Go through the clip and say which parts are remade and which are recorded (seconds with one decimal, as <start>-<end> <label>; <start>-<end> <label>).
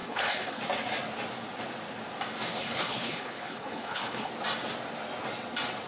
0.0-0.6 remade; 0.6-2.6 recorded; 2.6-4.3 remade; 4.3-5.9 recorded